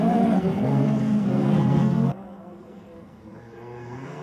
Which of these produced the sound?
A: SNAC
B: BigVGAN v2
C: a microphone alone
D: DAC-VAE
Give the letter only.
A